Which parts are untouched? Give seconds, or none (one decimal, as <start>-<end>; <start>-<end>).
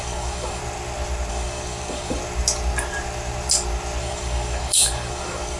0.6-1.3; 2.2-4.0